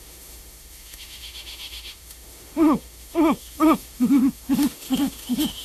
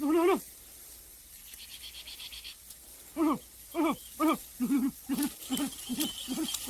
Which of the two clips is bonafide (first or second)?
second